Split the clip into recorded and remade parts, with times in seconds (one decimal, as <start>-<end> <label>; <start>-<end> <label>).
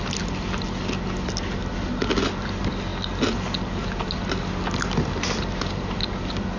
0.0-6.6 recorded